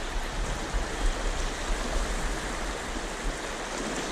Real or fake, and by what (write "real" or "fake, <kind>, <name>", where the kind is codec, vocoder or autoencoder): real